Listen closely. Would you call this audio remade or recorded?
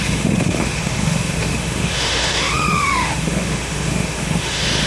remade